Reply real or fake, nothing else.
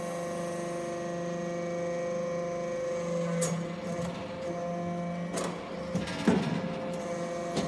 real